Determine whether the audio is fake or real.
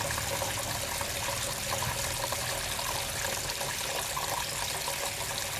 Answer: real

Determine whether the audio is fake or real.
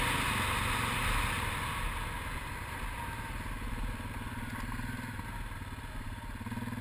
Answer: real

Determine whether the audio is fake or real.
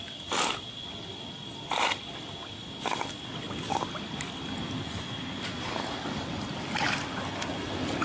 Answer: real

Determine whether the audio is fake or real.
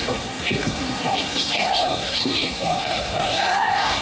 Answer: fake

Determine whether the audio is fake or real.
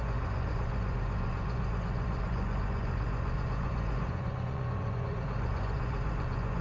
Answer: fake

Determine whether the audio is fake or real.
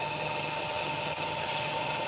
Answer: fake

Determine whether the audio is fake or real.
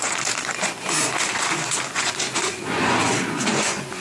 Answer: fake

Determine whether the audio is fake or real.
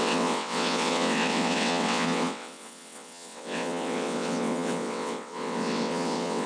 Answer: fake